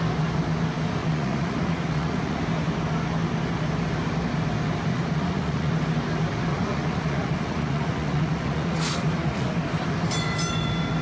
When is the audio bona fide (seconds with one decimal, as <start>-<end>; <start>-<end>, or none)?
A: 0.0-1.0; 2.4-4.9; 5.7-6.5; 9.5-11.0